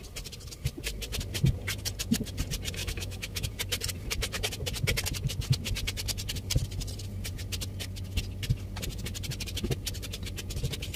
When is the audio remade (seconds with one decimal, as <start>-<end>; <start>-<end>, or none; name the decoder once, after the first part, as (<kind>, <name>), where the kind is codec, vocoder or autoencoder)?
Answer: 2.8-3.5 (autoencoder, DAC-VAE)

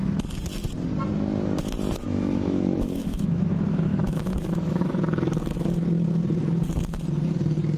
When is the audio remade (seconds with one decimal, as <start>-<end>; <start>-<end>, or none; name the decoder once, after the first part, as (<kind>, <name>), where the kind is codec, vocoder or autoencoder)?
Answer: 2.0-4.9 (autoencoder, DAC-VAE)

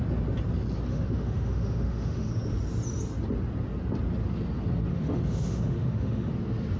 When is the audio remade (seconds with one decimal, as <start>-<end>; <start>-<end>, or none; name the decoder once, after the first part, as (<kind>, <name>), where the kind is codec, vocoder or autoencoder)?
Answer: 0.9-2.3 (autoencoder, DAC-VAE); 4.9-6.3

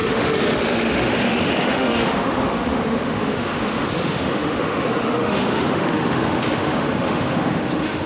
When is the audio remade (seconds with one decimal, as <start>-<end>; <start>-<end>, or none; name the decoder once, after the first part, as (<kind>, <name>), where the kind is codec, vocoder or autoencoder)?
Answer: 0.0-8.1 (autoencoder, DAC-VAE)

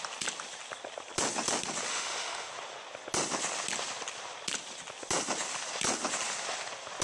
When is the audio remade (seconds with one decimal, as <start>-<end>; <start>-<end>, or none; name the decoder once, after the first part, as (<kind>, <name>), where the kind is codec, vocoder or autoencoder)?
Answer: 1.9-2.5 (autoencoder, DAC-VAE)

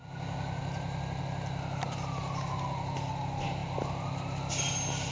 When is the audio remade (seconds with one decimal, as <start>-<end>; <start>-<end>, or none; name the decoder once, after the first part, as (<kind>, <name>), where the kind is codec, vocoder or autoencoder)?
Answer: none

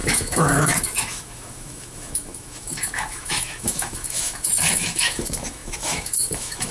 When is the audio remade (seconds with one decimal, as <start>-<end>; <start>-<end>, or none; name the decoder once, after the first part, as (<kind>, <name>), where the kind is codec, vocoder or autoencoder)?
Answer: 0.0-6.7 (autoencoder, DAC-VAE)

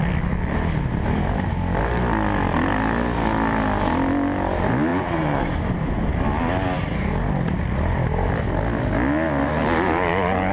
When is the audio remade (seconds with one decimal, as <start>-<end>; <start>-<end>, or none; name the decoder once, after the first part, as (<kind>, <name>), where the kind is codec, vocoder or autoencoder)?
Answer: none